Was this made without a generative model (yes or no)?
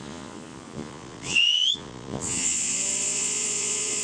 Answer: no